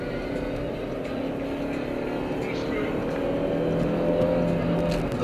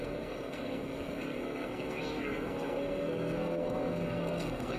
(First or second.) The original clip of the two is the first